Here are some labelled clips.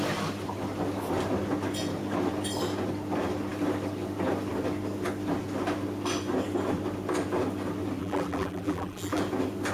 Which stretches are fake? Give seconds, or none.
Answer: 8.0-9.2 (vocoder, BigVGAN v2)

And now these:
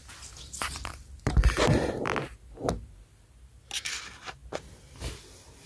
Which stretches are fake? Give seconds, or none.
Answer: none

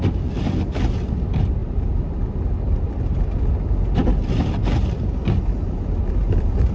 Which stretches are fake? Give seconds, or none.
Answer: none

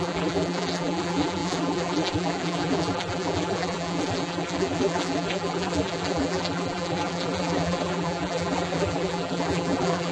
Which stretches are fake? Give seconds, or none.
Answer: 0.0-10.1 (vocoder, BigVGAN v2)

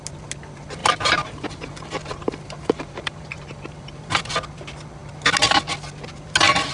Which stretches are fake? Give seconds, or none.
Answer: 0.8-4.3 (vocoder, BigVGAN v2)

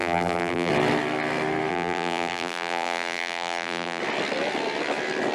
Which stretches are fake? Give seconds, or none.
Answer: 0.0-0.7 (vocoder, BigVGAN v2); 1.7-4.0

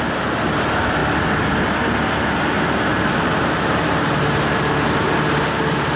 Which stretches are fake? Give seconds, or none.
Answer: 2.9-4.1 (vocoder, BigVGAN v2)